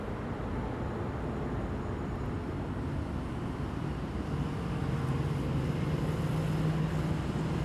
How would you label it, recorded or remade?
recorded